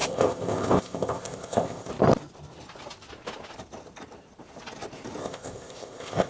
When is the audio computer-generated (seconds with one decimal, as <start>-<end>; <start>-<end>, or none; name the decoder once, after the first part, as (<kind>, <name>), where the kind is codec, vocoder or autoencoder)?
0.0-1.9 (codec, ZipCodec); 5.2-6.3